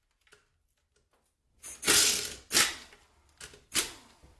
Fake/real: real